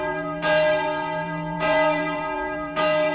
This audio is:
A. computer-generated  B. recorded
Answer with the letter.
A